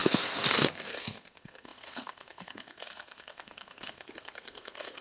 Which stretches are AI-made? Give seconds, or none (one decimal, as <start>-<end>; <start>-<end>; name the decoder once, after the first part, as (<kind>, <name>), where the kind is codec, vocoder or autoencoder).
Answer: 0.0-5.0 (codec, SNAC)